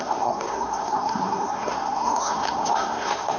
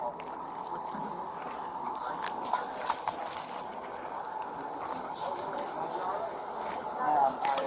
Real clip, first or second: second